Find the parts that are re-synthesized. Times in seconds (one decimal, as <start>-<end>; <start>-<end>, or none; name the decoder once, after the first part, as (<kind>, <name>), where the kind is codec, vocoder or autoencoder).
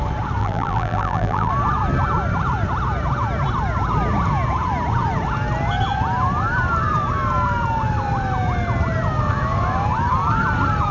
0.4-1.5 (vocoder, BigVGAN v2)